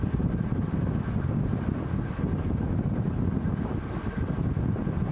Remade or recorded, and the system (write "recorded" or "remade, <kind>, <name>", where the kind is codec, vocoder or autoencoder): recorded